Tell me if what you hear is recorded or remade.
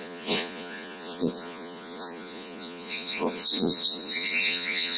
remade